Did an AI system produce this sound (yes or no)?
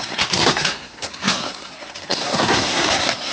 yes